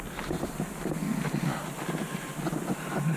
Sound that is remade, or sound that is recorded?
recorded